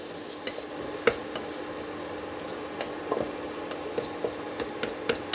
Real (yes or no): yes